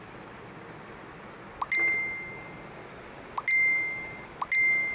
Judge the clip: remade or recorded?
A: recorded